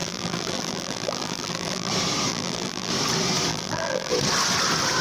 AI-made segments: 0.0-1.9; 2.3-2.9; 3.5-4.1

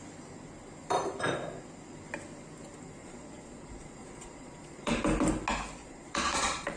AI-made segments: 3.0-4.9; 5.8-6.8

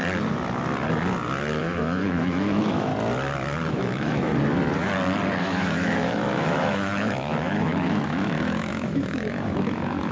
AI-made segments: 1.6-2.9; 3.7-4.3; 5.4-10.1

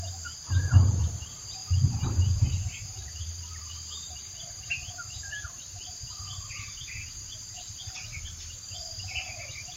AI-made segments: 0.0-1.6; 2.8-9.8